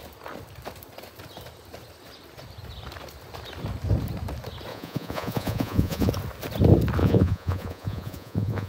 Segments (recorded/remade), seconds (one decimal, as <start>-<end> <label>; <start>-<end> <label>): 0.0-4.7 recorded; 4.7-6.1 remade; 6.1-7.0 recorded; 7.0-8.7 remade